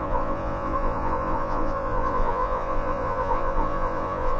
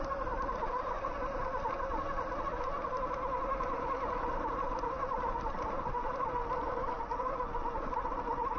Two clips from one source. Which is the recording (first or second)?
second